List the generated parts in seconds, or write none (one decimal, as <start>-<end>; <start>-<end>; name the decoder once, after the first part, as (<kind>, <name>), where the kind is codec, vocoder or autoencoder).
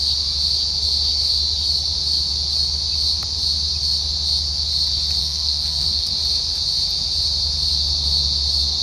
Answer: 5.2-6.1 (codec, SNAC)